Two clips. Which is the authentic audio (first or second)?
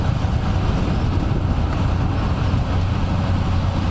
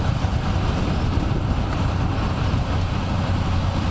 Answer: first